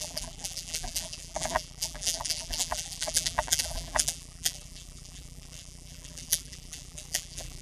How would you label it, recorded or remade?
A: remade